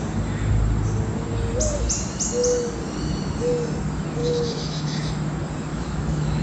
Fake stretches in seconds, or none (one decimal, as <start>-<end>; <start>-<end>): 4.2-5.1; 5.7-6.4